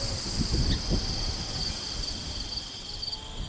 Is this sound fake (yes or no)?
no